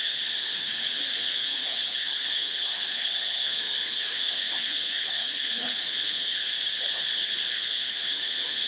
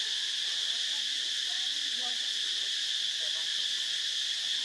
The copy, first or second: first